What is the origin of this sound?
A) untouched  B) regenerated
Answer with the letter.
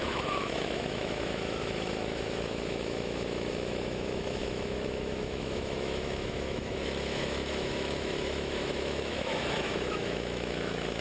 B